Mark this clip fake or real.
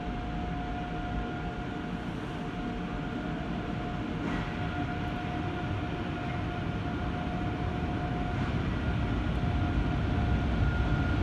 real